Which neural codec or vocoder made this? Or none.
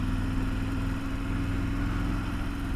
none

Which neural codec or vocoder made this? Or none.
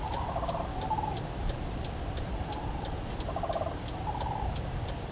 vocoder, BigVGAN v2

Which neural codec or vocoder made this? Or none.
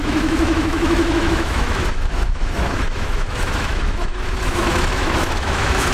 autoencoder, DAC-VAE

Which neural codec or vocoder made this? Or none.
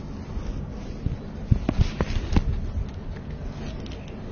none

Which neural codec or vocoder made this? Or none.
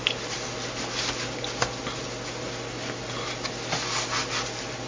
none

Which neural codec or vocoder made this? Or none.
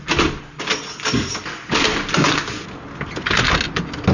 none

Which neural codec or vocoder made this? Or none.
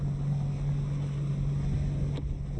none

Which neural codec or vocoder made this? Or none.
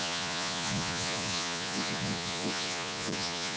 vocoder, Vocos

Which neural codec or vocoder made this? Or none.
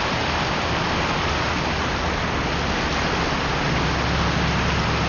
none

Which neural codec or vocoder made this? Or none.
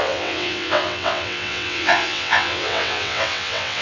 vocoder, WaveNeXt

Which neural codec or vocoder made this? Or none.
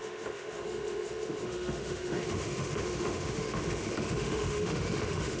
autoencoder, DAC-VAE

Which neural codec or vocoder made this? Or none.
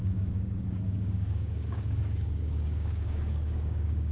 codec, DAC